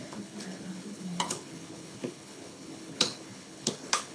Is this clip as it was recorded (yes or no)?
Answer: no